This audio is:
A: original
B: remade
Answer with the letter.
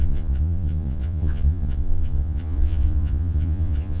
B